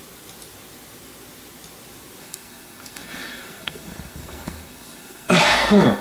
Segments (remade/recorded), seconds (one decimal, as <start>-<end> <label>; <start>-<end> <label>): 0.0-2.2 recorded; 2.2-6.0 remade